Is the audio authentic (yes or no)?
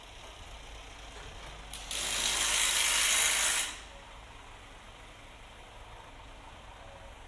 yes